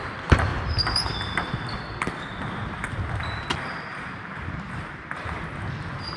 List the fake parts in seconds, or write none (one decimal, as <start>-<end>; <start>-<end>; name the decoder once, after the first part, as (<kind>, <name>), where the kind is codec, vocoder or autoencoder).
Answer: 0.5-1.1 (vocoder, BigVGAN v2); 3.9-5.4